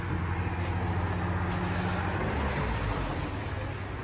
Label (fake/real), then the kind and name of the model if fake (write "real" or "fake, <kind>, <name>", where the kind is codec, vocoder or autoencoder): real